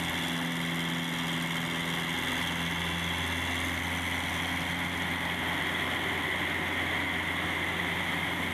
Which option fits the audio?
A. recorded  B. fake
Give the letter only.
A